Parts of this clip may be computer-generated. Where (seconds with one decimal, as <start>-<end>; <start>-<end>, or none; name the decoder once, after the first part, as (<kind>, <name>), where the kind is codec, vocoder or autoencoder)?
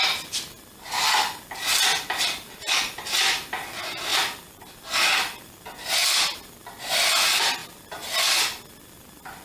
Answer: none